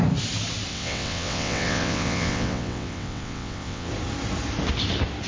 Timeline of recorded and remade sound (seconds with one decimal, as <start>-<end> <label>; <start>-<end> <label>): 0.0-0.7 recorded; 0.7-3.9 remade; 3.9-5.3 recorded

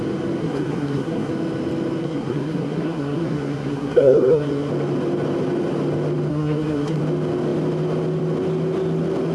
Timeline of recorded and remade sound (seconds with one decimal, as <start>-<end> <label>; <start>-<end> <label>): 0.0-0.4 recorded; 0.4-1.3 remade; 1.3-2.0 recorded; 2.0-4.7 remade; 4.7-6.3 recorded; 6.3-7.0 remade; 7.0-9.3 recorded